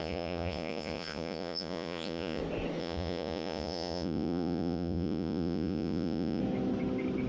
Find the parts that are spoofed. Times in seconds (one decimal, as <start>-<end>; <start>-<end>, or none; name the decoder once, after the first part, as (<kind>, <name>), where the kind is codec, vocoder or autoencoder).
0.0-2.4 (vocoder, Vocos); 2.8-6.4